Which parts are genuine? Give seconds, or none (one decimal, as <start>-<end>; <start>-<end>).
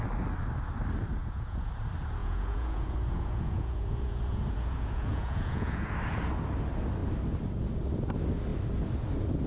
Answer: 0.0-1.2; 1.7-2.2; 5.9-9.5